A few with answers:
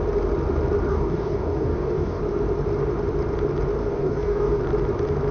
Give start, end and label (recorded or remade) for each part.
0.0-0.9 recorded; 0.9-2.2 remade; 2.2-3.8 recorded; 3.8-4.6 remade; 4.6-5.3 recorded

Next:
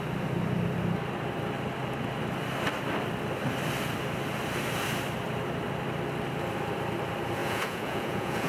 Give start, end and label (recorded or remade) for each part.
0.0-7.4 recorded; 7.4-8.5 remade

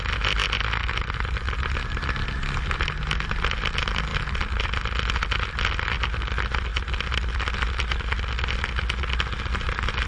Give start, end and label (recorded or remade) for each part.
0.0-10.1 recorded

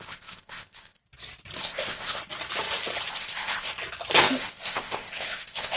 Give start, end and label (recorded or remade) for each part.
0.0-1.0 remade; 1.0-1.6 recorded; 1.6-2.2 remade; 2.2-3.1 recorded; 3.1-3.7 remade; 3.7-4.2 recorded; 4.2-5.8 remade

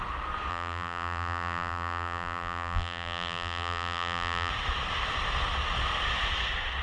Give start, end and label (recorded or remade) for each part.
0.0-0.5 recorded; 0.5-4.5 remade; 4.5-6.8 recorded